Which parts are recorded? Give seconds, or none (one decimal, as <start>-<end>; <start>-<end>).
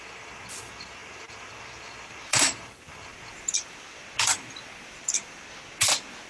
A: none